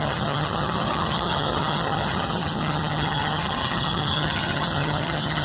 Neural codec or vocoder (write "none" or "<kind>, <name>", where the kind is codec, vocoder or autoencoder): vocoder, HiFi-GAN